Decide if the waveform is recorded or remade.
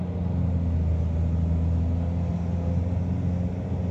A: recorded